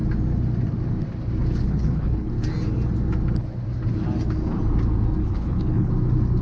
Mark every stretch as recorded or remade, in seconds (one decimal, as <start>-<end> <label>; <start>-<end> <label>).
0.0-1.6 recorded; 1.6-2.3 remade; 2.3-5.2 recorded; 5.2-5.9 remade; 5.9-6.4 recorded